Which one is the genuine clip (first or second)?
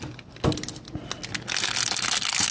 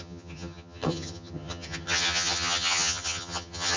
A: first